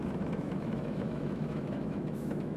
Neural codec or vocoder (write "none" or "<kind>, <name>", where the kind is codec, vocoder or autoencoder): autoencoder, DAC-VAE